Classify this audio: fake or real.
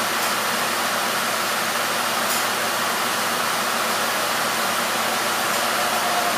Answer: real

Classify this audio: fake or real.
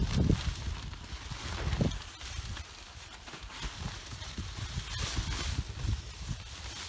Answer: real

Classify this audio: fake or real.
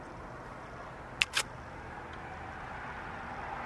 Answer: real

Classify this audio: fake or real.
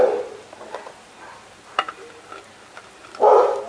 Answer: fake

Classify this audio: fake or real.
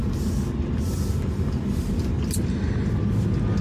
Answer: real